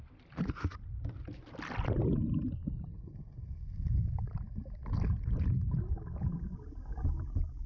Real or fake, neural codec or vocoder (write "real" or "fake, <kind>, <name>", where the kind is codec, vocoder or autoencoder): real